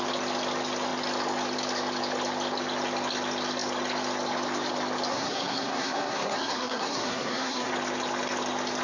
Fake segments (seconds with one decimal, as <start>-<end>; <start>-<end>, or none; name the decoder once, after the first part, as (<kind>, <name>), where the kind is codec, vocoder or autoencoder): 5.1-7.7 (codec, SNAC)

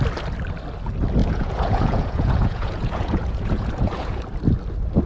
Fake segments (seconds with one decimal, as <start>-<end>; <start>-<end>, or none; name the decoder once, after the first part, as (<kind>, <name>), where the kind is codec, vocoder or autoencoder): 1.2-4.2 (vocoder, Vocos)

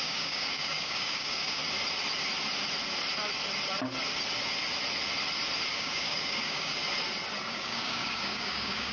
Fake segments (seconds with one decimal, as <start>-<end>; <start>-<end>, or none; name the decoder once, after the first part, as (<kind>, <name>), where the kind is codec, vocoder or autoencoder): 0.0-1.6 (codec, DAC); 5.7-6.8; 7.5-8.9

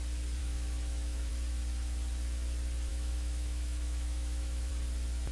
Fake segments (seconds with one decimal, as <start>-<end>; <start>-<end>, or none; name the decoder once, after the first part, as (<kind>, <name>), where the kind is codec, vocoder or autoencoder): 0.4-1.3 (autoencoder, DAC-VAE); 2.9-4.7

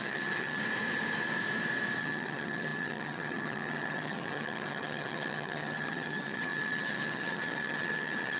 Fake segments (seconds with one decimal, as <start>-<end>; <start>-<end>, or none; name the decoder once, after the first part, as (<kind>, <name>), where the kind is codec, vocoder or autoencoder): 0.0-0.6 (vocoder, HiFi-GAN); 2.0-8.4